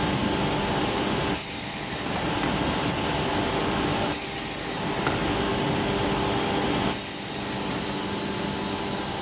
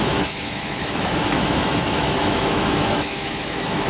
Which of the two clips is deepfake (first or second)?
second